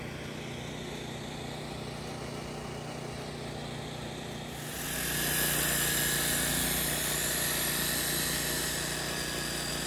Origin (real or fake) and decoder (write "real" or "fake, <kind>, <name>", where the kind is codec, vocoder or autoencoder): real